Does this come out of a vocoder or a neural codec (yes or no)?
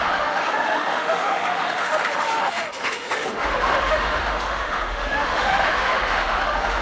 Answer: yes